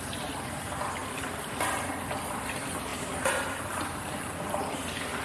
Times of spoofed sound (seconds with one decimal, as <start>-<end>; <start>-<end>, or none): 1.0-1.7; 2.9-3.6